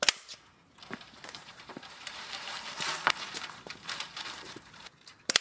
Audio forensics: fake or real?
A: fake